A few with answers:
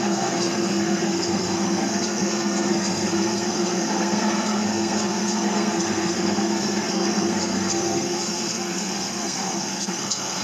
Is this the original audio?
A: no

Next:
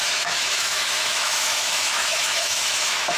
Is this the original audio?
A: no